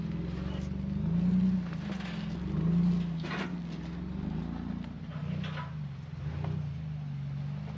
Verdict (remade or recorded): recorded